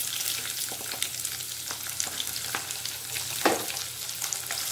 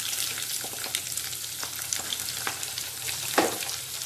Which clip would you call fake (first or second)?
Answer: second